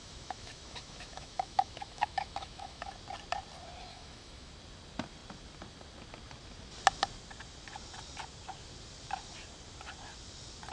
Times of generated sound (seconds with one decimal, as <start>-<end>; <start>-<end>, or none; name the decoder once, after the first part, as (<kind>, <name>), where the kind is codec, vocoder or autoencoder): 0.0-2.9 (autoencoder, DAC-VAE); 3.9-4.5